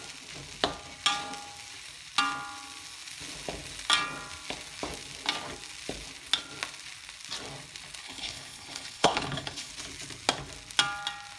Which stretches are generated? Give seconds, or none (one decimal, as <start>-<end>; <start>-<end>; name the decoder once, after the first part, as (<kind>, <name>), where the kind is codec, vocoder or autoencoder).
8.0-9.7 (codec, HILCodec)